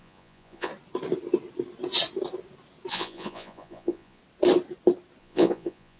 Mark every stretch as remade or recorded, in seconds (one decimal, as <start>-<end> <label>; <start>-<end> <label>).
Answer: 0.0-0.7 remade; 0.7-2.9 recorded; 2.9-4.2 remade; 4.2-5.2 recorded; 5.2-6.0 remade